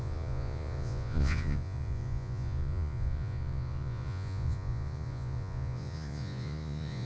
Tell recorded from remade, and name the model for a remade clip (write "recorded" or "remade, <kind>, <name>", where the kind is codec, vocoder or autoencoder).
remade, vocoder, Vocos